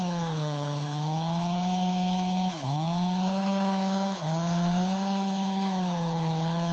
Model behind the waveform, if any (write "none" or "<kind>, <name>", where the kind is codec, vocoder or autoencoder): codec, HILCodec